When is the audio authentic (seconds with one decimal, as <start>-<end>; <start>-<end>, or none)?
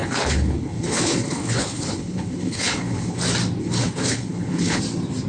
3.2-3.6; 4.8-5.3